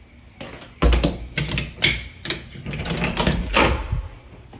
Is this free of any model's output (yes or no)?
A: yes